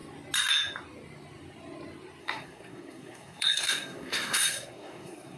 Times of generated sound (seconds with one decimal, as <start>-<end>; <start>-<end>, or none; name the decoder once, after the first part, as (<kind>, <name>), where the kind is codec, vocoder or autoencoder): 2.2-5.4 (codec, SNAC)